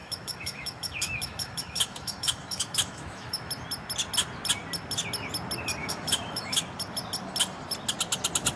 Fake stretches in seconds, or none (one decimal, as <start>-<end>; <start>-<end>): 0.0-3.5; 5.8-6.6